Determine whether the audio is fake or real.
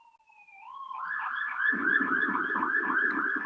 real